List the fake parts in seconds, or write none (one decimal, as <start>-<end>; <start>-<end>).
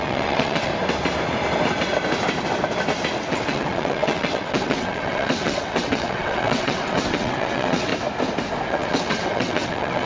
0.0-0.7; 3.1-7.9; 8.7-10.1